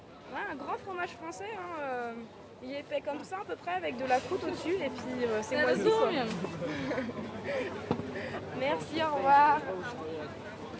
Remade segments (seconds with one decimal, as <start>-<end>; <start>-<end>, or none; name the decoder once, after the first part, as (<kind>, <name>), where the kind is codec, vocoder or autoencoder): none

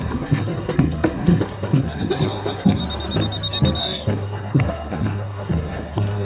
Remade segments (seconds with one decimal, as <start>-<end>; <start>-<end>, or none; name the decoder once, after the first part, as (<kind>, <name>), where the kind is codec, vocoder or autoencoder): 0.0-2.8 (codec, SNAC); 3.8-6.2

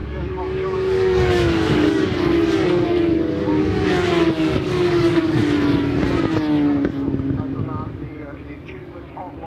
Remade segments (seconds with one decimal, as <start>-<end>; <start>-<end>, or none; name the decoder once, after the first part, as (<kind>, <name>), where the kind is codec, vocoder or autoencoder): 0.0-5.4 (codec, DAC); 7.4-9.5

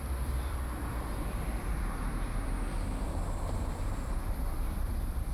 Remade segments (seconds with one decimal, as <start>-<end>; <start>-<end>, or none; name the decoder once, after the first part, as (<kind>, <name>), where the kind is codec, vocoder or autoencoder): 0.0-5.3 (vocoder, BigVGAN v2)

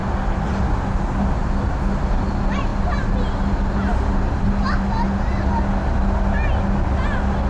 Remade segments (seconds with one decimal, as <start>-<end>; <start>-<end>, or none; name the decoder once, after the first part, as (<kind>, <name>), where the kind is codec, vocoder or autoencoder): 0.0-0.8 (vocoder, BigVGAN v2)

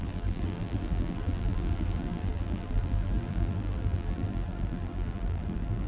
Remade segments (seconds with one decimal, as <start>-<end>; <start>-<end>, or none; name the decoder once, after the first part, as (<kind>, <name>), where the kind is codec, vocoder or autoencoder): 0.0-5.9 (vocoder, BigVGAN v2)

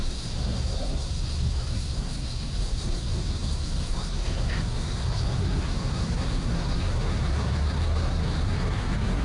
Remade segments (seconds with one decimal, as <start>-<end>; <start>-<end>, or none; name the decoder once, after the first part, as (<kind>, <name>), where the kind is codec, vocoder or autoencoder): 0.0-9.2 (codec, SNAC)